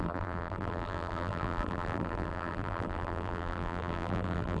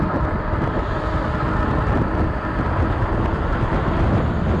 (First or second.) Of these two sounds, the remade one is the first